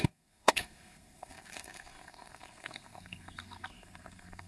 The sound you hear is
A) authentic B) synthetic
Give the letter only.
B